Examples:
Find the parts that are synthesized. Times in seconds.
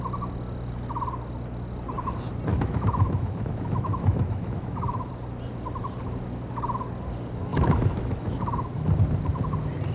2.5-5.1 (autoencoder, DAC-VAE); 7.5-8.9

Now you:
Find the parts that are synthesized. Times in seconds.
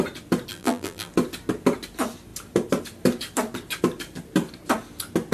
0.5-1.1 (vocoder, BigVGAN v2)